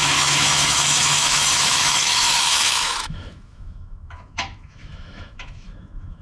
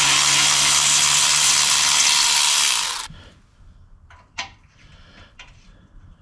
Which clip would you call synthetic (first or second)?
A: first